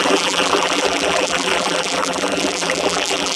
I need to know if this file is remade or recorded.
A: remade